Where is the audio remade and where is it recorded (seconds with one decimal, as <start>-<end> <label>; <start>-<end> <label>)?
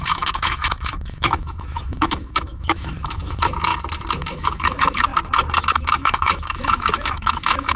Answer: 0.0-3.7 remade; 3.7-4.2 recorded; 4.2-5.1 remade; 5.1-5.6 recorded; 5.6-7.8 remade